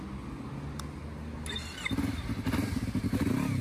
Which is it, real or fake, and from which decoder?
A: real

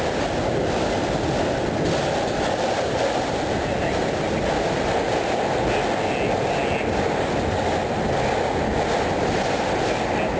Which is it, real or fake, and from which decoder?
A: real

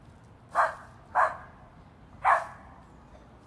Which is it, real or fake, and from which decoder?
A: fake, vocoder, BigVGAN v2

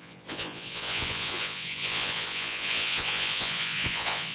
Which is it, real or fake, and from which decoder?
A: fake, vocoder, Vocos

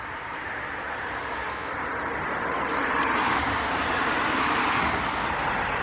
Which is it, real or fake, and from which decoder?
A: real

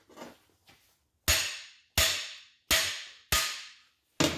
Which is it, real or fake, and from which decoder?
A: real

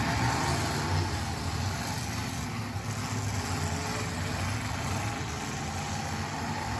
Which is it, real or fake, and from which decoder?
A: real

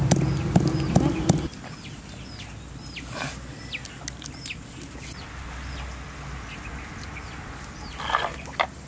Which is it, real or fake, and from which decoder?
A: real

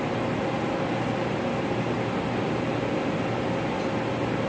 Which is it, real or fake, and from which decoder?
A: real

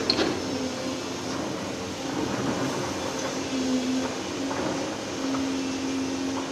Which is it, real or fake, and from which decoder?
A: real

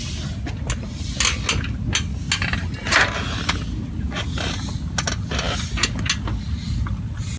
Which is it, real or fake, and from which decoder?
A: real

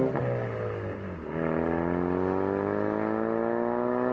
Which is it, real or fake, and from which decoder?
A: real